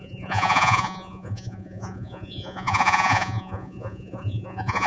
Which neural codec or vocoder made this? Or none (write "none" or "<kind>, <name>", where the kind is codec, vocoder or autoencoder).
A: vocoder, Vocos